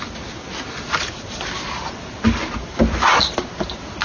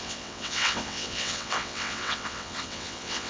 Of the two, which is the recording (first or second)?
first